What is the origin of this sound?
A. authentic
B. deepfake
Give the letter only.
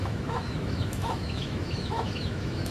B